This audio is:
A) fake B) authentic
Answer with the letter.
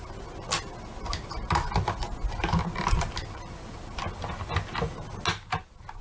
B